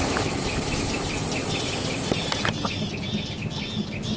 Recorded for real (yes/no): yes